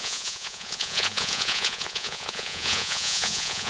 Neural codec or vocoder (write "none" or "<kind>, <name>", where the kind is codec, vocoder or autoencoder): vocoder, Vocos